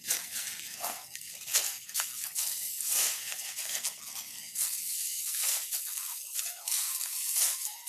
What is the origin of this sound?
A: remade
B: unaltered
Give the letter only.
A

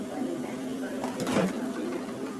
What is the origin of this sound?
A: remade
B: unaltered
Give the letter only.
B